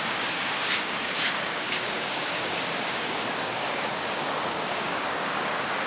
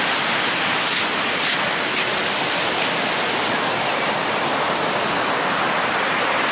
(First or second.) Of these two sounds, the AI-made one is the first